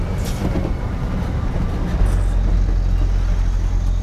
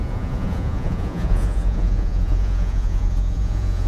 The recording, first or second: first